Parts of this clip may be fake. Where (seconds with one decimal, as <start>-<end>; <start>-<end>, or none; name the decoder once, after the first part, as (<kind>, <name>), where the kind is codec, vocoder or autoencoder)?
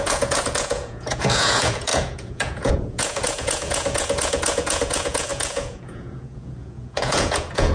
0.0-7.7 (vocoder, Vocos)